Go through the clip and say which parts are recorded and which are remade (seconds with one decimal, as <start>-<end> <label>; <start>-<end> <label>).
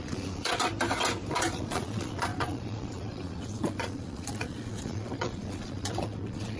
0.0-0.7 remade; 0.7-1.3 recorded; 1.3-6.6 remade